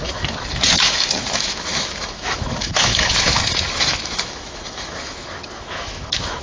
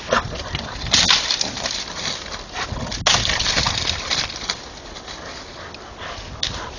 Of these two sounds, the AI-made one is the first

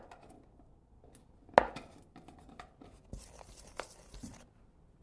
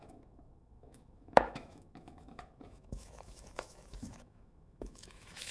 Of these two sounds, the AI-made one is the second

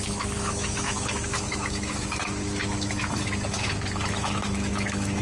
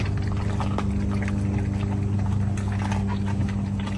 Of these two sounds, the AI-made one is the first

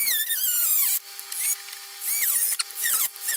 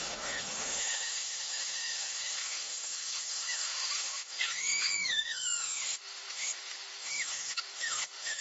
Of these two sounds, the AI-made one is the second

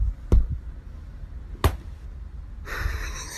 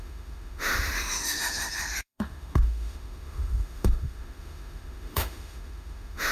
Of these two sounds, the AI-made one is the second